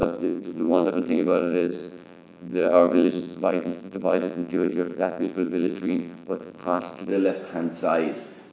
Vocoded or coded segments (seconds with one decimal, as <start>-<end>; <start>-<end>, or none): 0.0-7.1

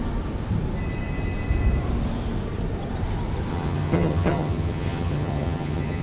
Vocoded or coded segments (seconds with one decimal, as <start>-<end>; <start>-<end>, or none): 3.5-6.0